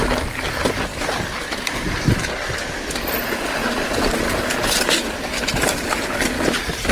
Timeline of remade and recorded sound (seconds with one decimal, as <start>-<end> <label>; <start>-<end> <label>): 0.0-0.9 recorded; 0.9-4.8 remade; 4.8-6.9 recorded